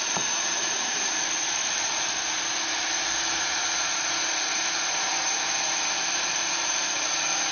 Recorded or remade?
remade